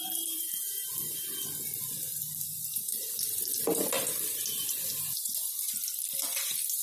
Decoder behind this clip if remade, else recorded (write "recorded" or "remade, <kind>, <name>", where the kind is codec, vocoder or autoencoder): remade, vocoder, BigVGAN v2